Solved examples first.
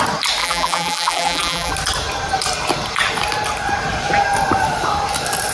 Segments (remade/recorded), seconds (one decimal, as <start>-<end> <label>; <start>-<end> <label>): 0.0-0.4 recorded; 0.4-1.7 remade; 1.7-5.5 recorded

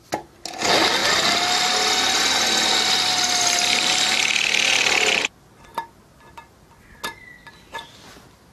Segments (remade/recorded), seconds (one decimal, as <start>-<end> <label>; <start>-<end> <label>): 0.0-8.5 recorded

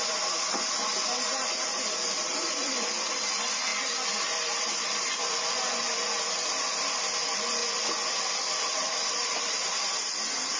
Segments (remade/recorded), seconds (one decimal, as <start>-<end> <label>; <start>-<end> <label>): 0.0-7.6 remade; 7.6-8.2 recorded; 8.2-10.6 remade